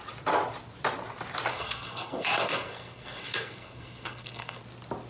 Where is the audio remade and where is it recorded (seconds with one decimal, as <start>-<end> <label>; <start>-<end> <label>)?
0.0-1.5 recorded; 1.5-4.6 remade; 4.6-5.1 recorded